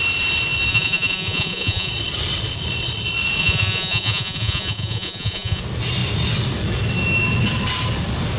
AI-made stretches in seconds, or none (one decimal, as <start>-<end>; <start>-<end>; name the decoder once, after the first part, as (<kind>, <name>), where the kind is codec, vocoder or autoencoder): 0.7-1.9 (vocoder, Vocos); 3.4-5.6